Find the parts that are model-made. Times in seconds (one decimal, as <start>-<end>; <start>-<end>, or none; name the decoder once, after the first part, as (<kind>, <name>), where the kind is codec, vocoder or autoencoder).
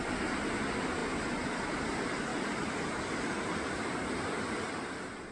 2.3-3.0 (vocoder, BigVGAN v2)